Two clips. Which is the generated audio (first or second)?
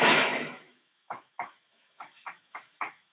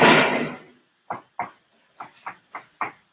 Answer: first